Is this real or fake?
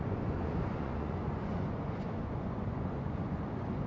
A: fake